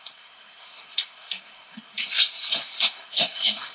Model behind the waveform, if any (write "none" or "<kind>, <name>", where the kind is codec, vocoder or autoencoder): codec, SNAC